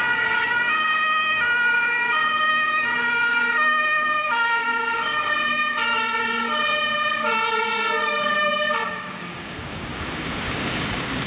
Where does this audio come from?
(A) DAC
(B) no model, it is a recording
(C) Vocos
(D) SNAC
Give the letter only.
A